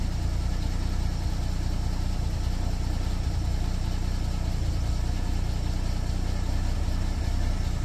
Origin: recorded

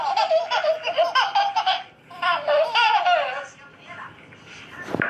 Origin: recorded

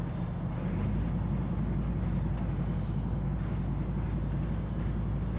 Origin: recorded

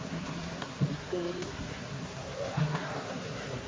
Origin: remade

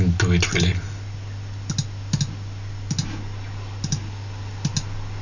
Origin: recorded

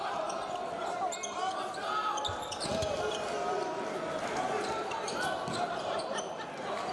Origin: recorded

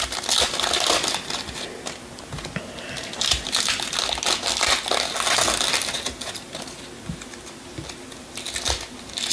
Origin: recorded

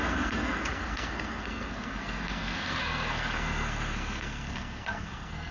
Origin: remade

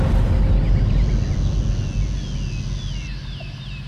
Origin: recorded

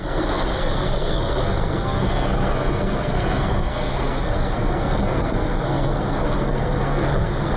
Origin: remade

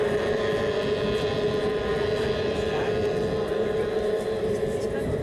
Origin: recorded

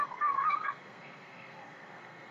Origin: remade